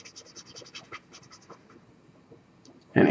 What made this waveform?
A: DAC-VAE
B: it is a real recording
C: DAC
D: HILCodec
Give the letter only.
B